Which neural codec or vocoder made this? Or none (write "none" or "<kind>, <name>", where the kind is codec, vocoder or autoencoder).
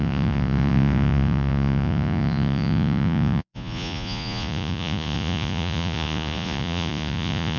vocoder, Vocos